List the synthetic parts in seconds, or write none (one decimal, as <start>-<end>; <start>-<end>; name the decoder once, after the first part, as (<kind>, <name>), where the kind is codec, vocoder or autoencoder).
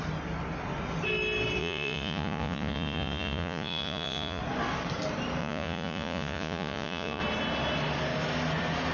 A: 1.6-4.4 (vocoder, Vocos); 5.4-7.2